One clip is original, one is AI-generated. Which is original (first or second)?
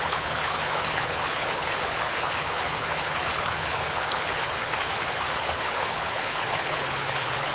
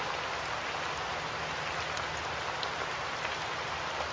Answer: second